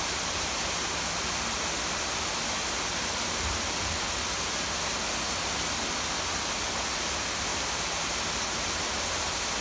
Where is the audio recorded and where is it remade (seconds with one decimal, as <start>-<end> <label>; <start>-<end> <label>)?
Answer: 0.0-7.5 recorded; 7.5-8.2 remade; 8.2-9.6 recorded